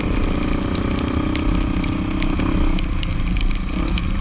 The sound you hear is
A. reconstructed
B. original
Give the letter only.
B